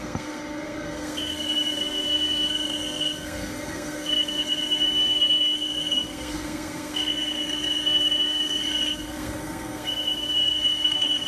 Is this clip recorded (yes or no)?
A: no